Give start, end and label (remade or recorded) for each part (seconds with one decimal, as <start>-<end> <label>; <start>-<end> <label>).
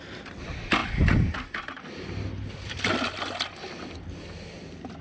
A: 0.0-5.0 recorded